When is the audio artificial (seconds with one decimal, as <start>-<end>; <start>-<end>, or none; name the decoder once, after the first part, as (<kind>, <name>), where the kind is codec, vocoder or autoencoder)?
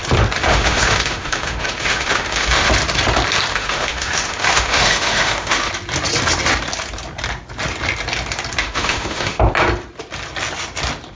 0.5-2.7 (autoencoder, DAC-VAE); 3.5-5.7; 8.6-9.4